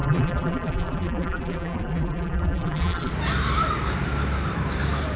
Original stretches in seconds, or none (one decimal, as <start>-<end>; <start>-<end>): 3.1-5.2